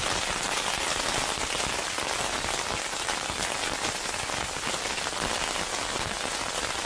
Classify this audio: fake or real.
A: real